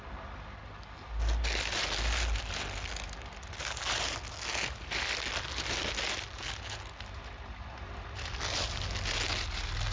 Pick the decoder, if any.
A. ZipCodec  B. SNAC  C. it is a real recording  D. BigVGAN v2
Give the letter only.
C